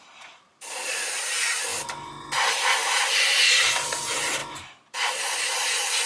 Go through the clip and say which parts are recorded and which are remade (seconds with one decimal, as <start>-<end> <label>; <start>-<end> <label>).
0.0-1.7 remade; 1.7-3.5 recorded; 3.5-6.1 remade